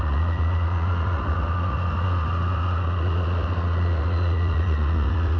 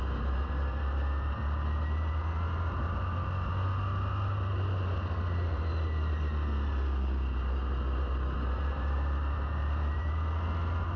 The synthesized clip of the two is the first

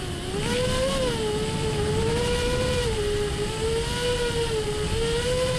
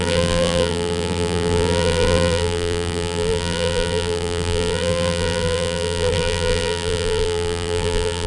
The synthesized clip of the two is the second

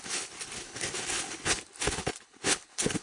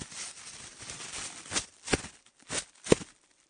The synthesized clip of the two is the first